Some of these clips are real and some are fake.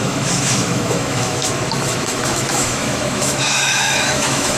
fake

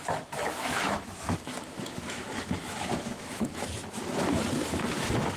fake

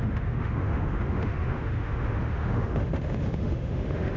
fake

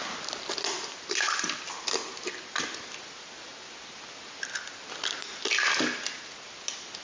real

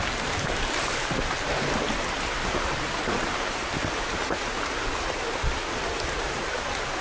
real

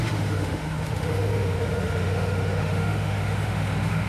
fake